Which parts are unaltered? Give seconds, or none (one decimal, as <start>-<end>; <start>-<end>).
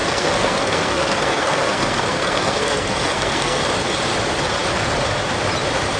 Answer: 3.6-6.0